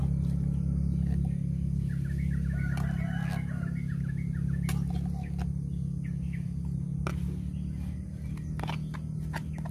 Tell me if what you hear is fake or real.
real